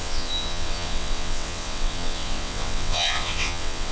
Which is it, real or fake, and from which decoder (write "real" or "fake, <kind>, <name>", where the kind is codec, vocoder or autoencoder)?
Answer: fake, vocoder, WaveNeXt